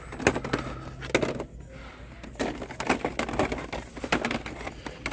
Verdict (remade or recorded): recorded